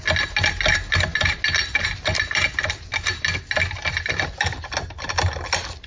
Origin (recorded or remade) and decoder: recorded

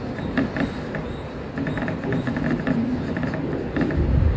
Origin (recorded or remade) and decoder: recorded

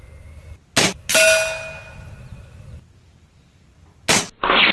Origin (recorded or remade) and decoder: recorded